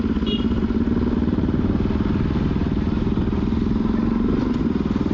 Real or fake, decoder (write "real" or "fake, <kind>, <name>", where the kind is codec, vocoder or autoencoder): real